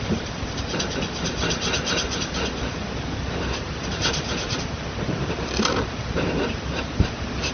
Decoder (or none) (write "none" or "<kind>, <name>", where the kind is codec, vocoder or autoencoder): vocoder, BigVGAN v2